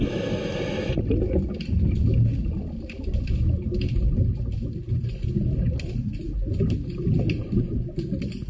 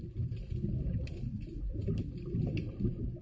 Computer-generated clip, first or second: second